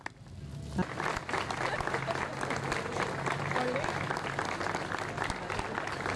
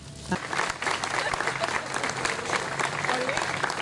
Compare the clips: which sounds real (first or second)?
first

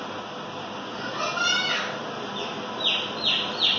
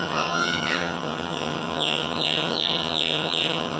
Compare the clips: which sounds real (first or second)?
first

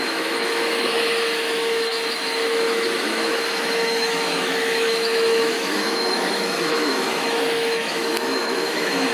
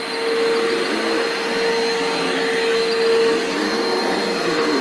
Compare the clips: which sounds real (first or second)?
second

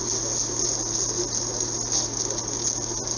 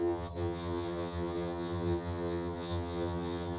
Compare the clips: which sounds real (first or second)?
first